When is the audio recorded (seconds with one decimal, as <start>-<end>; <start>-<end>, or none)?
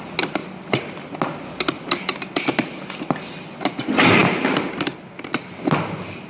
0.0-6.3